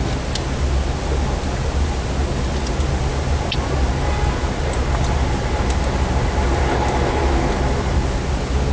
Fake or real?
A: real